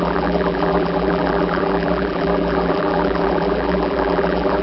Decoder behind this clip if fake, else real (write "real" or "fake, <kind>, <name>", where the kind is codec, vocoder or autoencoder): fake, vocoder, BigVGAN v2